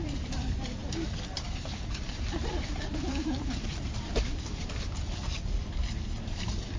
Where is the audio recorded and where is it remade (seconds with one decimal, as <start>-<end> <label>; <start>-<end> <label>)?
0.0-6.8 remade